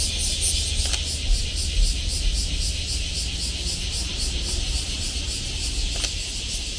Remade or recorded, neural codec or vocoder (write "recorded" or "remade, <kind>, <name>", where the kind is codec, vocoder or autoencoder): recorded